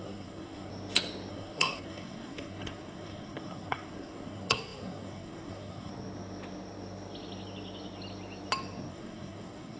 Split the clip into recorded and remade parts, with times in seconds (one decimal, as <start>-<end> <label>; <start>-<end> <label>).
0.0-0.7 remade; 0.7-1.3 recorded; 1.3-5.9 remade; 5.9-8.9 recorded; 8.9-9.8 remade